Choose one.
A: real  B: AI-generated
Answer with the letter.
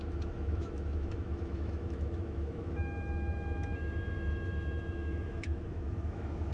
B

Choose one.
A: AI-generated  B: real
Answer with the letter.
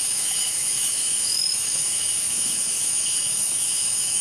A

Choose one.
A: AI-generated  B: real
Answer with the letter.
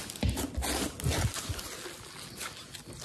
B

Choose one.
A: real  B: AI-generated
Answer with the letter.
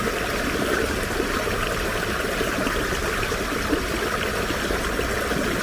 A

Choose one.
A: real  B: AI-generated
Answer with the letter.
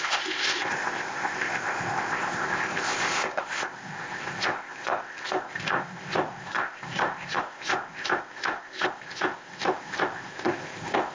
B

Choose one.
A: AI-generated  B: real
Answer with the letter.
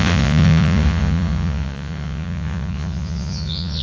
A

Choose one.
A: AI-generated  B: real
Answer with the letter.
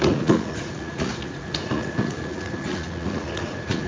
A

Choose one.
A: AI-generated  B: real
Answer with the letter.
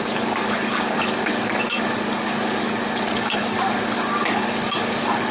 A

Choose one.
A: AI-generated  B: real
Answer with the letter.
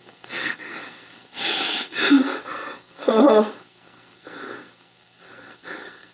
A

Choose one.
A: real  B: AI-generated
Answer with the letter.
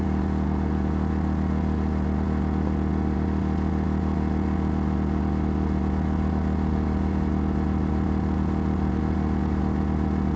A